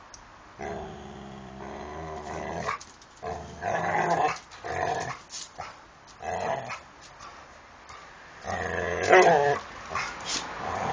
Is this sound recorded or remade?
recorded